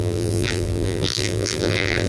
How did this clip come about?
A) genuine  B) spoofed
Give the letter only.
B